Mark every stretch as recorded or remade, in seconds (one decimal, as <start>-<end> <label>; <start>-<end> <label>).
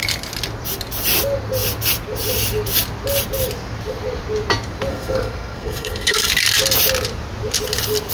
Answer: 0.0-4.9 recorded; 4.9-6.3 remade; 6.3-8.1 recorded